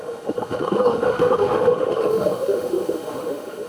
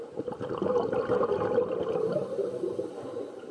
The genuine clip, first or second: second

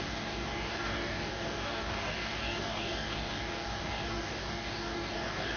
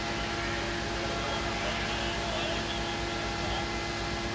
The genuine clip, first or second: second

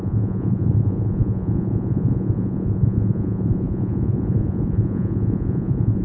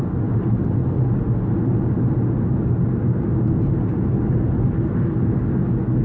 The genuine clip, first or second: second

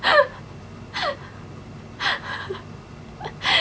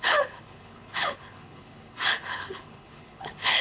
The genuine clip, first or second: first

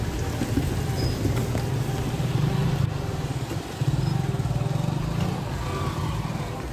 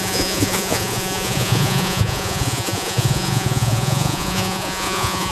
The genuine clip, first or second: first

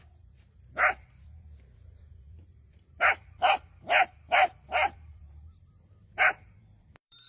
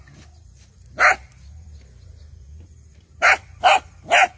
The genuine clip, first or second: second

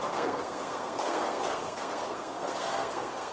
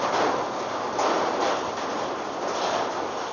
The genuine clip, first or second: second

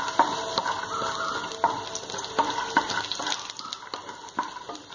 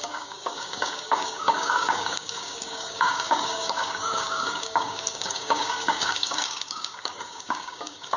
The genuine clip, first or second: first